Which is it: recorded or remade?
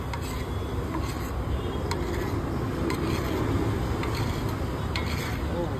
recorded